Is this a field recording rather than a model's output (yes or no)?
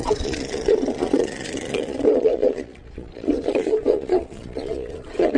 no